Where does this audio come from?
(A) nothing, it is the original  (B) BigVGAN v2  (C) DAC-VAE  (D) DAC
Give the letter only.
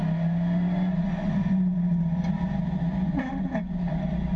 A